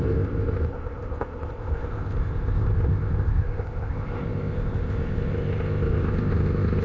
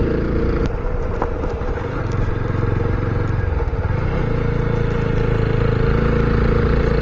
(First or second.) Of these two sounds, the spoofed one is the first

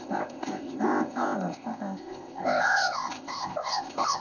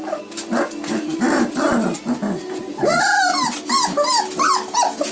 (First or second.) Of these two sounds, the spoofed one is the first